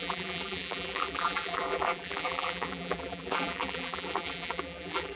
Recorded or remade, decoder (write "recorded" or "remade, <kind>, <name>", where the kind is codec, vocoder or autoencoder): remade, vocoder, BigVGAN v2